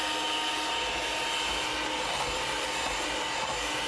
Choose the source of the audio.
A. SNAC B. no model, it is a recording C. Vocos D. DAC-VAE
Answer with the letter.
B